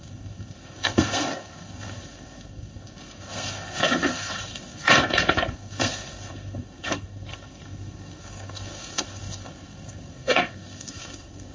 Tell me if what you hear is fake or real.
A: fake